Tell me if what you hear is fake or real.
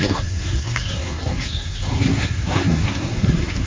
fake